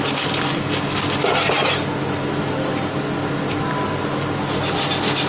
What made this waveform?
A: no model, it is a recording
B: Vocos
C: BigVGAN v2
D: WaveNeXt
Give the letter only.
A